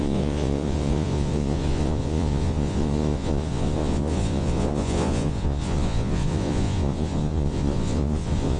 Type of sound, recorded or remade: remade